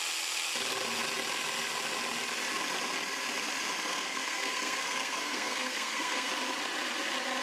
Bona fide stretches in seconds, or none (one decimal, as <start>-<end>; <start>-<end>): 0.0-3.9; 6.3-7.4